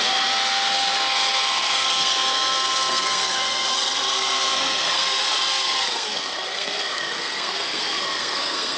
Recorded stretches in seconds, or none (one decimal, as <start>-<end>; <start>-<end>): none